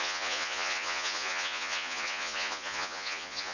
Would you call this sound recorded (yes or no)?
no